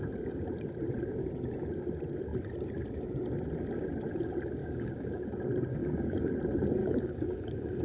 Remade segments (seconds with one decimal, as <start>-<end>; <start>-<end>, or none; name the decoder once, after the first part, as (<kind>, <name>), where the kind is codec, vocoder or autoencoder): 4.6-5.3 (codec, DAC); 5.7-6.3; 6.8-7.8